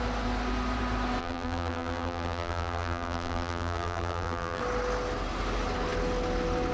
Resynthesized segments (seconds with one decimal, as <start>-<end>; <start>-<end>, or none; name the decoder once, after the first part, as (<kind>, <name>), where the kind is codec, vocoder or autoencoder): 1.2-4.6 (vocoder, BigVGAN v2)